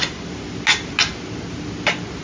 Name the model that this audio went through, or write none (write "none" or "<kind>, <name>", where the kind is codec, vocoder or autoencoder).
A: none